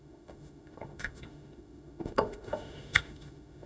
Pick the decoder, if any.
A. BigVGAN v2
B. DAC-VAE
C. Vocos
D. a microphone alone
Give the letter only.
B